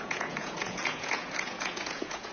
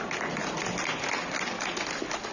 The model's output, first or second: first